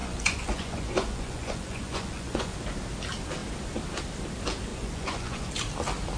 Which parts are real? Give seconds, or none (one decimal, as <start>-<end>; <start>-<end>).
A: 2.5-4.7; 5.5-6.2